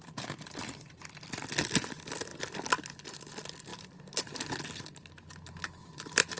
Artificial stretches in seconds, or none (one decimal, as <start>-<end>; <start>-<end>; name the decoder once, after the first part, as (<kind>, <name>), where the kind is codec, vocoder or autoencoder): none